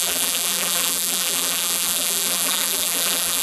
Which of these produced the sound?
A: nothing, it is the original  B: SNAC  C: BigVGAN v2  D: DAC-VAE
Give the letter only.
C